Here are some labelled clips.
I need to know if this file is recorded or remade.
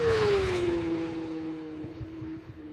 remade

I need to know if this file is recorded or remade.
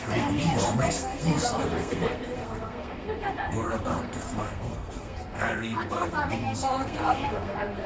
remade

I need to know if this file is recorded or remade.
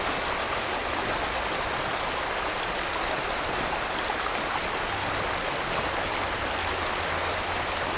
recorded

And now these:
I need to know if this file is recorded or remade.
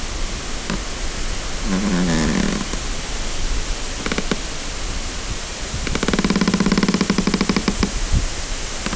recorded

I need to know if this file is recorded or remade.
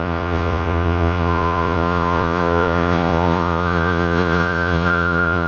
remade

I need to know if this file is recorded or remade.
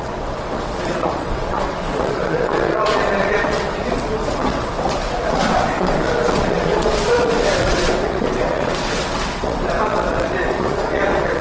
remade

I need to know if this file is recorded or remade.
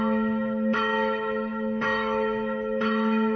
remade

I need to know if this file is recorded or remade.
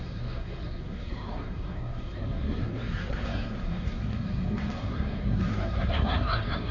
remade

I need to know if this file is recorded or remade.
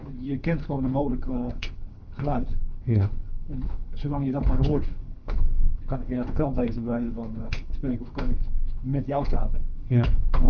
remade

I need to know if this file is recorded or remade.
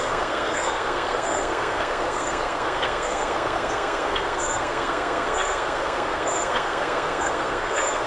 remade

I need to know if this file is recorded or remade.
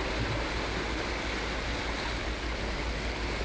recorded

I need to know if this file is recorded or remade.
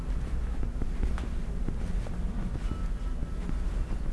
recorded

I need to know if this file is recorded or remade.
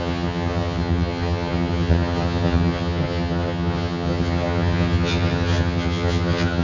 remade